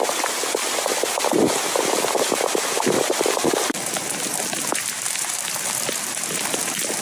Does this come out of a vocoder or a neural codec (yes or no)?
no